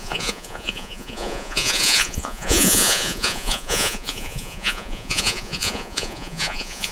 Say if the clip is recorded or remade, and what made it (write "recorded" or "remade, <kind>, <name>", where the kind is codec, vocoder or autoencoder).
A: remade, vocoder, Vocos